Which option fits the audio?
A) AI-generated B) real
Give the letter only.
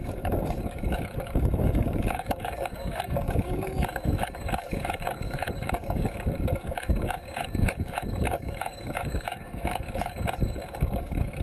A